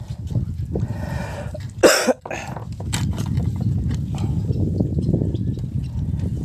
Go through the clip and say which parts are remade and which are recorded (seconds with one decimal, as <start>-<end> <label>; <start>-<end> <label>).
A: 0.0-6.4 recorded